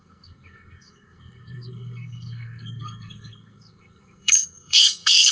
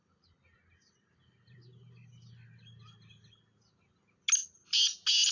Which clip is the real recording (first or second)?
second